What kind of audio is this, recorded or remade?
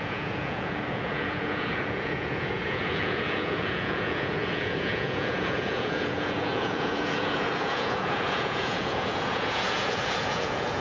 remade